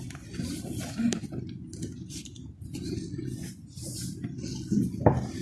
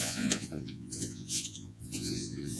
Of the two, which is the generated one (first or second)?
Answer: second